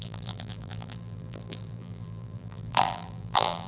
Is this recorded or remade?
remade